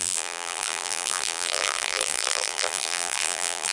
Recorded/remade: remade